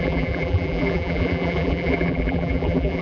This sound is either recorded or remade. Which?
remade